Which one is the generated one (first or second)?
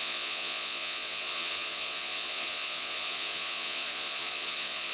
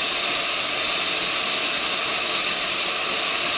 first